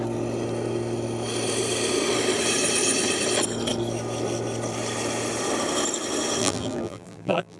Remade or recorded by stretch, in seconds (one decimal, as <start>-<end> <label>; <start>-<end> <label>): 0.0-6.4 recorded; 6.4-7.6 remade